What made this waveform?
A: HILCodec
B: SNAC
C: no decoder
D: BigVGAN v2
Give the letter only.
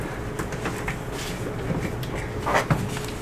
C